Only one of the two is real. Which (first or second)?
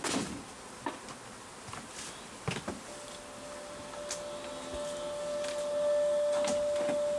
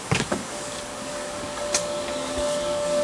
first